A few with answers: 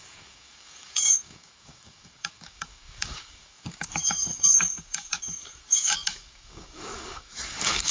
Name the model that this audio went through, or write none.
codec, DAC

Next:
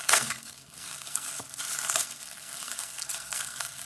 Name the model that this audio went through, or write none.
codec, SNAC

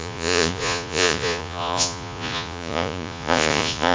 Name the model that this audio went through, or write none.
vocoder, Vocos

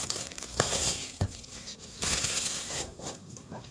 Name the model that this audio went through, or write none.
codec, SNAC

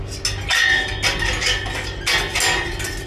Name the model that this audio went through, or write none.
none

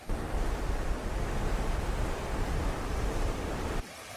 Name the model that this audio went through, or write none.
vocoder, BigVGAN v2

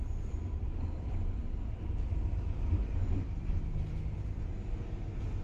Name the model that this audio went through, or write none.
none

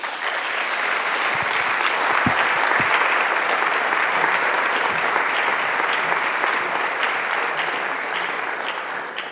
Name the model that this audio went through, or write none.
none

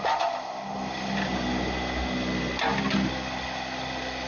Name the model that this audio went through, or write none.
none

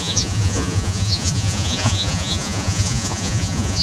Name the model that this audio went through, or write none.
vocoder, Vocos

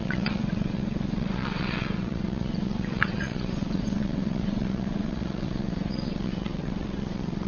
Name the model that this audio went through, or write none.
vocoder, WaveNeXt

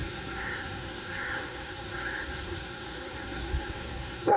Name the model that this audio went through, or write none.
codec, SNAC